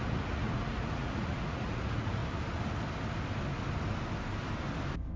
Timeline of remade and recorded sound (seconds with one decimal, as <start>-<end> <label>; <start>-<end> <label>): 0.0-2.2 remade; 2.2-5.2 recorded